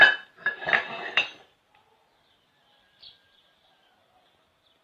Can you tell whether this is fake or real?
fake